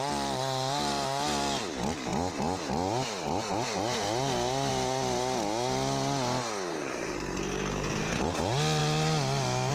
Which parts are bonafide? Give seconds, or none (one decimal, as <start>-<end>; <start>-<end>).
0.0-6.7; 8.2-9.7